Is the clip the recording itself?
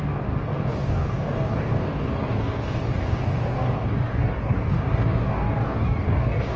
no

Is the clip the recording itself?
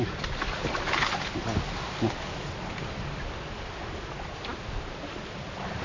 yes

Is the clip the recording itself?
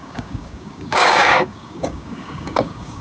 no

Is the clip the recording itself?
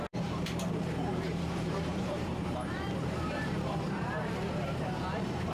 no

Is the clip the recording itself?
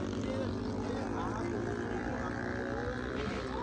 yes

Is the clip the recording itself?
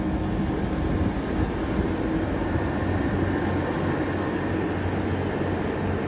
yes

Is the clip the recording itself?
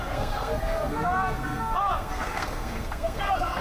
no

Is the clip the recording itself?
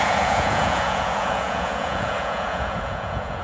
no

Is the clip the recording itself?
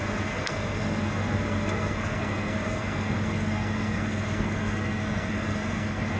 no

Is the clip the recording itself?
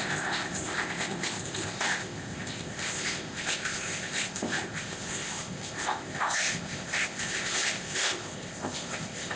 no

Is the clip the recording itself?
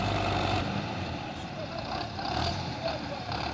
no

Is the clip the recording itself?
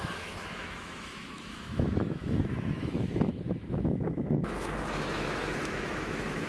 no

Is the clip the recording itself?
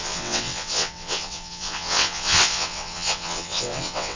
no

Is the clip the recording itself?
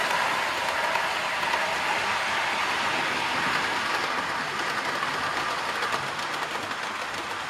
yes